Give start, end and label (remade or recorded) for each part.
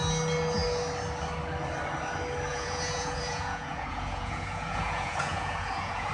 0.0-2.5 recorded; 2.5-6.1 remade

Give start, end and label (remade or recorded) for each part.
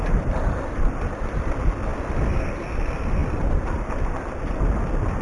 0.0-1.9 recorded; 1.9-2.5 remade; 2.5-5.2 recorded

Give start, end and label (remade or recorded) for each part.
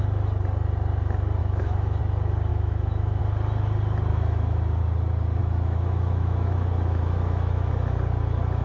0.0-1.4 recorded; 1.4-2.0 remade; 2.0-2.5 recorded; 2.5-3.2 remade; 3.2-4.1 recorded; 4.1-4.8 remade; 4.8-5.4 recorded; 5.4-7.7 remade; 7.7-8.6 recorded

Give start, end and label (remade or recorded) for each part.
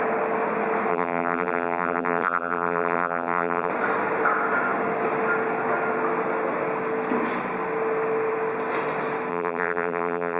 0.0-0.9 recorded; 0.9-3.7 remade; 3.7-9.3 recorded; 9.3-10.4 remade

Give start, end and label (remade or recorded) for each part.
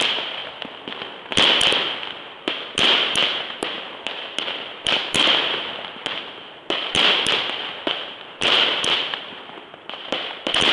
0.0-0.4 remade; 0.4-2.2 recorded; 2.2-10.7 remade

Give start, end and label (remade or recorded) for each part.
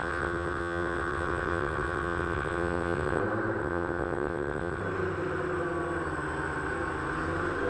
0.0-3.2 remade; 3.2-3.6 recorded; 3.6-4.8 remade; 4.8-7.7 recorded